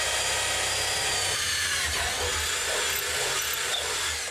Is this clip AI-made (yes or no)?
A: no